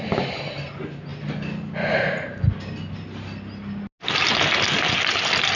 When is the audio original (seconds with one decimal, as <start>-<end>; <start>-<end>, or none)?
0.0-5.6